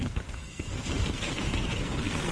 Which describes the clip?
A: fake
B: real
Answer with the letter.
A